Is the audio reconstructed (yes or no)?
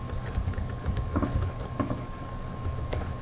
yes